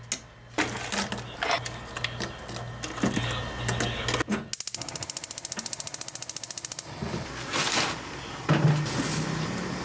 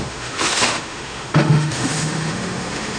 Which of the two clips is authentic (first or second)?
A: first